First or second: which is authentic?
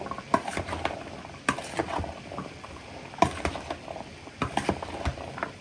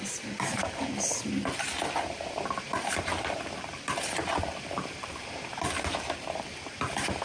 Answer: first